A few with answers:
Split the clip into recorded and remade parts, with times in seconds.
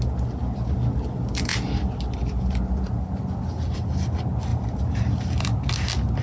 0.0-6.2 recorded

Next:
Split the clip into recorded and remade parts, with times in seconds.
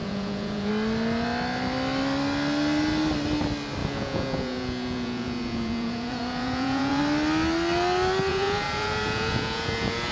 0.0-0.7 remade; 0.7-3.8 recorded; 3.8-7.0 remade; 7.0-8.3 recorded; 8.3-10.1 remade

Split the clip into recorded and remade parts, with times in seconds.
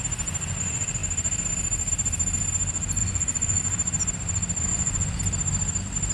0.0-3.0 recorded; 3.0-3.6 remade; 3.6-4.7 recorded; 4.7-5.2 remade; 5.2-6.1 recorded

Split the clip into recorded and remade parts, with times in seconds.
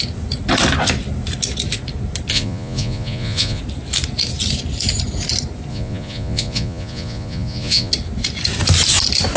0.0-2.3 recorded; 2.3-3.6 remade; 3.6-5.7 recorded; 5.7-7.9 remade; 7.9-9.4 recorded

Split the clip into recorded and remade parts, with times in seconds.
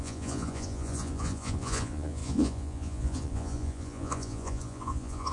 0.0-5.3 remade